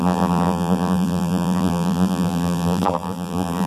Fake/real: fake